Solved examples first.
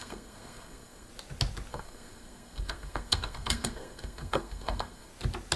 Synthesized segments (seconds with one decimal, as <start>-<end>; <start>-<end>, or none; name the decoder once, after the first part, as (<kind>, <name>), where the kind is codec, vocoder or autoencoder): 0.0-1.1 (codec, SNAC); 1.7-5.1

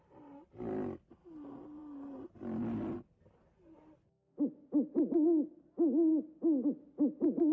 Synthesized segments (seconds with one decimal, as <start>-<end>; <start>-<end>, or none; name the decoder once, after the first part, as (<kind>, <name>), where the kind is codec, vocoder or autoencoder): none

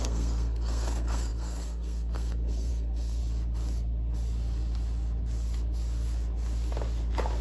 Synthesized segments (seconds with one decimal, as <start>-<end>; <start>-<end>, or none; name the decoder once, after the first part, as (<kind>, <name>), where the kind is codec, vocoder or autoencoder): 0.0-3.2 (codec, SNAC)